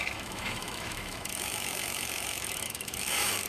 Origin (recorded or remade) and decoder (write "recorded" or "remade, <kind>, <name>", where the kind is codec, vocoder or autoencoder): remade, autoencoder, DAC-VAE